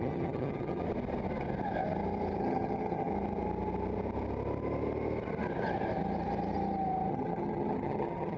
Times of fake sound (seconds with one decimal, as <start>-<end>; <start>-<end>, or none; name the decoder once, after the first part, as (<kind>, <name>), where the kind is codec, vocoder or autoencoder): 0.0-0.8 (vocoder, HiFi-GAN); 2.4-3.1; 7.1-8.4